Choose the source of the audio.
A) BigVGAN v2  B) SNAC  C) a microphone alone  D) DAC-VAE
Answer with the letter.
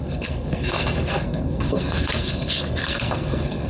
B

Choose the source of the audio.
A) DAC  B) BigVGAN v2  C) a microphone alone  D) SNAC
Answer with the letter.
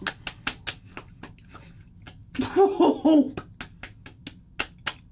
C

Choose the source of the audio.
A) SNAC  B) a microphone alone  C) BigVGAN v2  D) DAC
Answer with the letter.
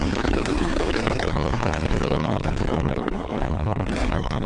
A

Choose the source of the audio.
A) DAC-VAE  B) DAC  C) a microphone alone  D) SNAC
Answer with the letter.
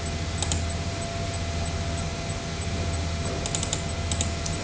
C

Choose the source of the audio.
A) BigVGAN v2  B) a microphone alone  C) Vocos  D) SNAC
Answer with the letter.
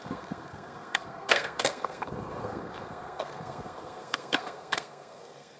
D